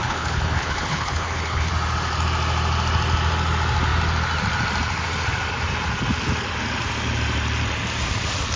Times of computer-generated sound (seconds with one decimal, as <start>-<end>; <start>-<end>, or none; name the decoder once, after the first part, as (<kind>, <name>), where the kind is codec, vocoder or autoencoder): 0.0-1.7 (codec, HILCodec)